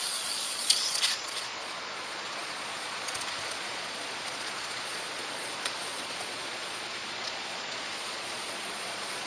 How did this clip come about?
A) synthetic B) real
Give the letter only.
A